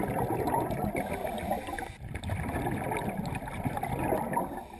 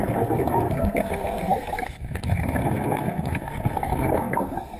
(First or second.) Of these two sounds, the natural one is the first